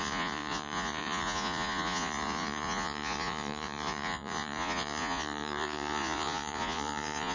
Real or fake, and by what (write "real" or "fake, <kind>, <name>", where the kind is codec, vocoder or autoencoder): fake, vocoder, Vocos